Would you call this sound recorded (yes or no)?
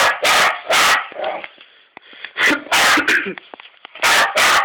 yes